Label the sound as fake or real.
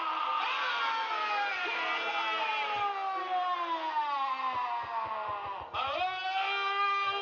real